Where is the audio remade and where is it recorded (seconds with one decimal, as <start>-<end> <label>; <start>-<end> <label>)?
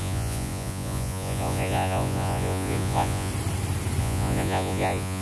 0.0-3.3 remade; 3.3-4.0 recorded; 4.0-5.2 remade